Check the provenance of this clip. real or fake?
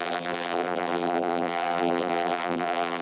fake